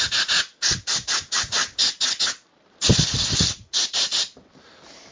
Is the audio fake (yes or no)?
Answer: no